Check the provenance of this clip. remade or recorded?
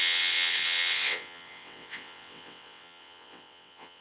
remade